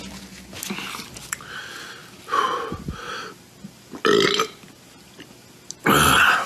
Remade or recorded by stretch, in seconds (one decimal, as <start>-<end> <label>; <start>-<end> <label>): 0.0-2.0 recorded; 2.0-2.7 remade; 2.7-6.5 recorded